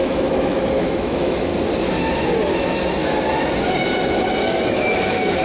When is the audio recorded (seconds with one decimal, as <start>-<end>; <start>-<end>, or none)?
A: 1.5-4.7